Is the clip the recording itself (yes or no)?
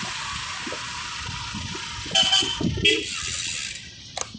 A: yes